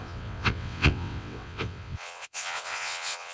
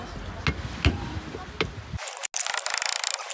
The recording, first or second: second